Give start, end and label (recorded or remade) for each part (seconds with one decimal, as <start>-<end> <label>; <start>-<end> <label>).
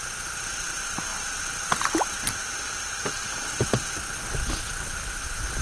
0.0-5.6 recorded